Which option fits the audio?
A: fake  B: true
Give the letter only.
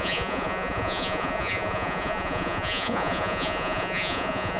A